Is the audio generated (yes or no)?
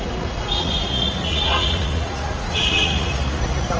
yes